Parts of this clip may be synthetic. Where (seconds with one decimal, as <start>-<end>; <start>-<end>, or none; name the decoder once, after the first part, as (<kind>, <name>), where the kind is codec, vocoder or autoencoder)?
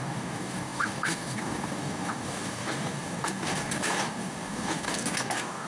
0.0-5.7 (codec, DAC)